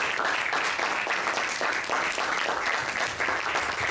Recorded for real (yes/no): yes